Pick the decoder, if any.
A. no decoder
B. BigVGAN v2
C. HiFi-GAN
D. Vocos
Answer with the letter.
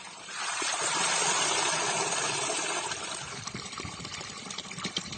B